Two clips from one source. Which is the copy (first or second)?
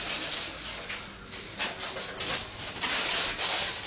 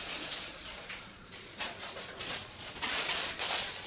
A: second